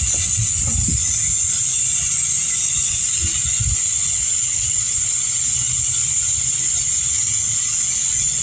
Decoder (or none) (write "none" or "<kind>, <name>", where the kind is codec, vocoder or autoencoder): none